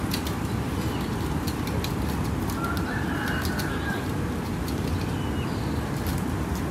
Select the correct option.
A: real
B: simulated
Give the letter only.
A